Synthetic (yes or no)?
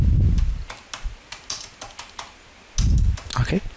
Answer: no